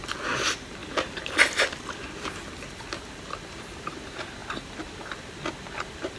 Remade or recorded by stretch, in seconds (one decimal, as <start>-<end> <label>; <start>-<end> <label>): 0.0-6.2 recorded

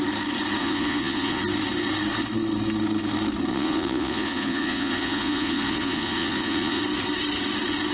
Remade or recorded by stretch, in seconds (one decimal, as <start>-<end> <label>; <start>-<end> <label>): 0.0-0.6 recorded; 0.6-1.4 remade; 1.4-3.5 recorded; 3.5-6.8 remade; 6.8-7.9 recorded